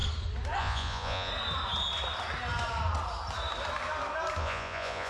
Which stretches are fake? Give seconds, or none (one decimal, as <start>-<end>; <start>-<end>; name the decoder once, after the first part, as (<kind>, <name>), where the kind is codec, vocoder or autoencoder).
0.6-1.3 (vocoder, Vocos); 4.4-5.1